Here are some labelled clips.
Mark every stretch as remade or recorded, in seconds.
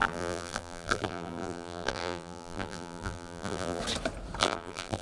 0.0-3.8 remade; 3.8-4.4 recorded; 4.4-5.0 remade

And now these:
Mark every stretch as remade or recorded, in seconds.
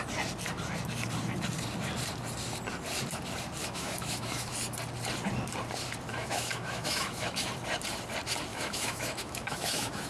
0.0-3.6 recorded; 3.6-4.5 remade; 4.5-6.1 recorded; 6.1-7.5 remade; 7.5-8.5 recorded; 8.5-10.1 remade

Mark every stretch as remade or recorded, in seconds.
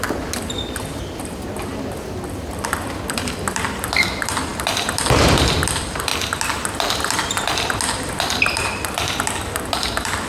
0.0-1.7 remade; 1.7-2.5 recorded; 2.5-6.1 remade; 6.1-8.1 recorded; 8.1-10.3 remade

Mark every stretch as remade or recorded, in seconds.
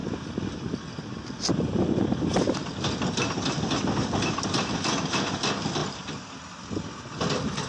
0.0-7.7 recorded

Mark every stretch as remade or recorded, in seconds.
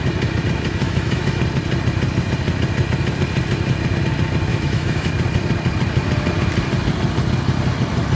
0.0-0.8 recorded; 0.8-1.4 remade; 1.4-4.5 recorded; 4.5-5.1 remade; 5.1-8.1 recorded